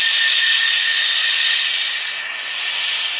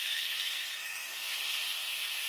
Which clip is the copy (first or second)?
second